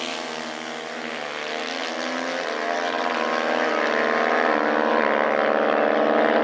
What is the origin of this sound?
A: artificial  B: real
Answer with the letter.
B